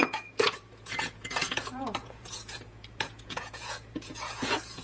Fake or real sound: fake